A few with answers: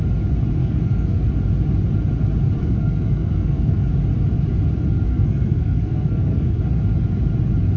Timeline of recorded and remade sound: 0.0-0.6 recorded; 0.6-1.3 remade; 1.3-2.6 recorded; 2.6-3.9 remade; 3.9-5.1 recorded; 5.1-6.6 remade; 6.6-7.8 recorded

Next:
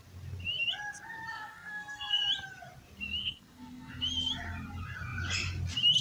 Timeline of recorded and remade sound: 0.0-1.3 recorded; 1.3-2.2 remade; 2.2-3.2 recorded; 3.2-3.9 remade; 3.9-6.0 recorded

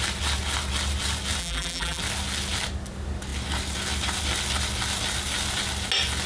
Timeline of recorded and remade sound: 0.0-1.4 recorded; 1.4-2.0 remade; 2.0-6.3 recorded

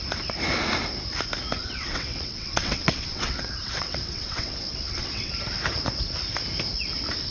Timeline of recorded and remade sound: 0.0-1.6 recorded; 1.6-5.3 remade; 5.3-7.3 recorded

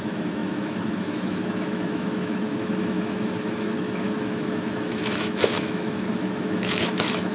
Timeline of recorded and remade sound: 0.0-7.3 remade

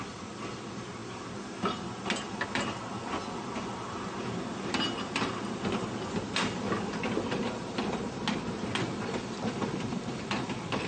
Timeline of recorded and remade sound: 0.0-9.9 recorded; 9.9-10.9 remade